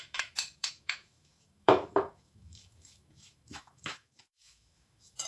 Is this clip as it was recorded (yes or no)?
no